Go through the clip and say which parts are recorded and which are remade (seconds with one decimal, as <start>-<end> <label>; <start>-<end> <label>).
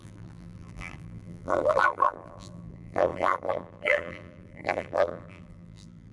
0.0-6.1 remade